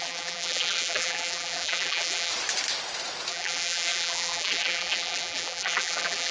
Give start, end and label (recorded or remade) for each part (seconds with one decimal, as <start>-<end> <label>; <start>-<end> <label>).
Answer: 0.0-2.3 remade; 2.3-3.3 recorded; 3.3-6.3 remade